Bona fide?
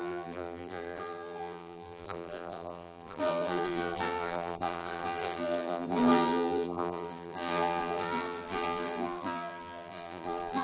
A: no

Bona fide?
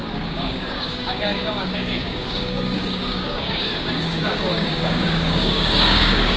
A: no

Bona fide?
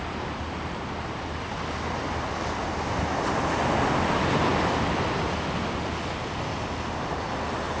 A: yes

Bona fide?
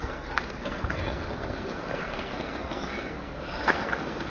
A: no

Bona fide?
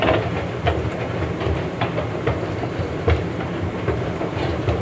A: no